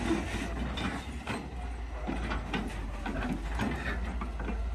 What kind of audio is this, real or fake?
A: real